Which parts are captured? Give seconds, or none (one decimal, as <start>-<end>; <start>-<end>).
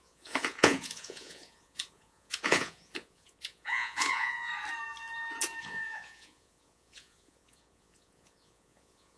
4.5-5.6